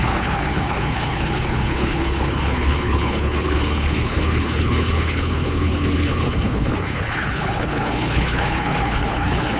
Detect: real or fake fake